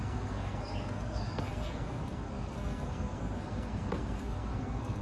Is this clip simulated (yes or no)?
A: yes